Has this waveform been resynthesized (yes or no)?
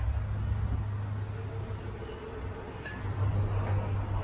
no